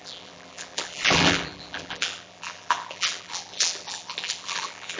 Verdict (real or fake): fake